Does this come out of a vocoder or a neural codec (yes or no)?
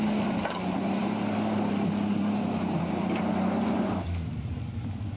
yes